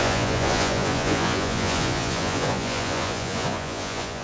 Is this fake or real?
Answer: fake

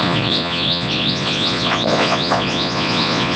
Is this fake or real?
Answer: fake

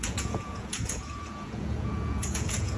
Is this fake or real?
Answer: fake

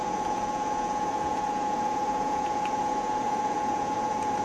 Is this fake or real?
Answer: fake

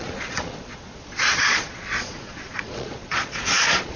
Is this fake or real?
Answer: fake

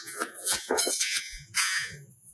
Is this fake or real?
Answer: fake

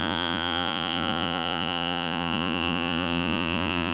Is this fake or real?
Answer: fake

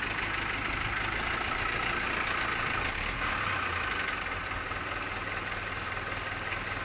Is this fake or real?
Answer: real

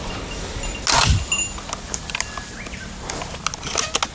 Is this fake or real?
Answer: real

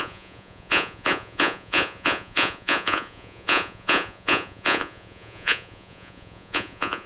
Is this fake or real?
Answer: fake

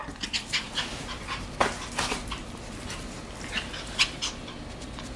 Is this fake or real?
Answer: real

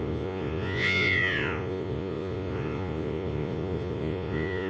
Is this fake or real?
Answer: fake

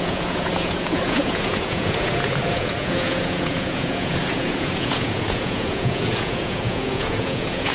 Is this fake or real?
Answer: fake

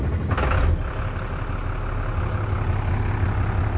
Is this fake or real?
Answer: real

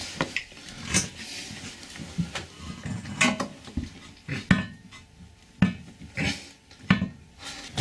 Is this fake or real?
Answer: real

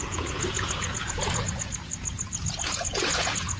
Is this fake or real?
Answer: fake